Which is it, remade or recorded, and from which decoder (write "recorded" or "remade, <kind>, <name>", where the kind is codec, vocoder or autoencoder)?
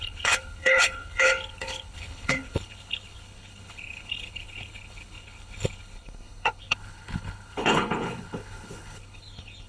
remade, codec, HILCodec